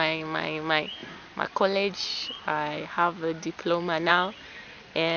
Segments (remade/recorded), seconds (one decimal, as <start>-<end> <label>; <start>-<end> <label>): 0.0-5.2 recorded